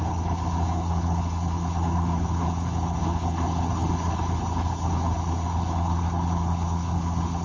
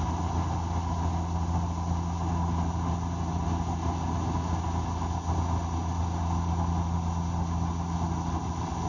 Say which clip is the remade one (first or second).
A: first